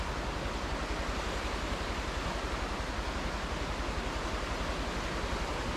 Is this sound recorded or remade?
recorded